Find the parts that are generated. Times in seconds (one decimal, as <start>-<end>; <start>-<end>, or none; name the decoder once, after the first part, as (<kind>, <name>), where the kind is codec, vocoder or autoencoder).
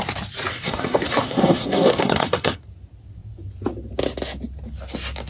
0.5-2.6 (codec, SNAC)